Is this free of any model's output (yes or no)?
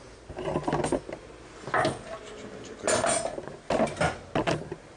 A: yes